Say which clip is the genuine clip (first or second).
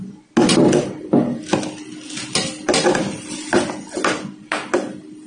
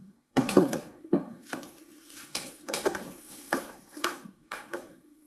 first